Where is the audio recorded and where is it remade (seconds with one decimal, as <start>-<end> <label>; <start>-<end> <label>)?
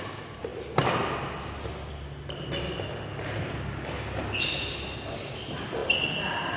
0.0-6.6 recorded